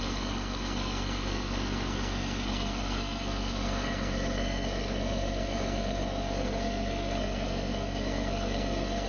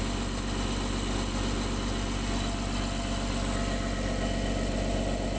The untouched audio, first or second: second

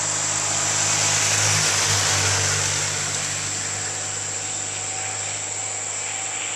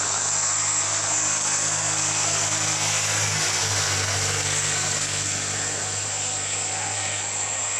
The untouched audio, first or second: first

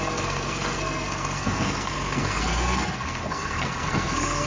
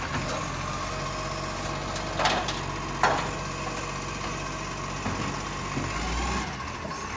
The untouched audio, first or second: second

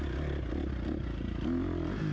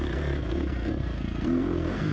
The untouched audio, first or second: first